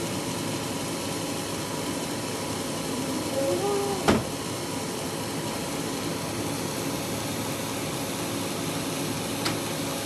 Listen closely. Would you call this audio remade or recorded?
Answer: recorded